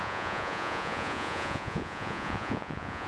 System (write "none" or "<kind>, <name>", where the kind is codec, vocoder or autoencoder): vocoder, Vocos